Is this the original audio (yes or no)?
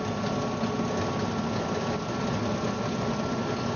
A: yes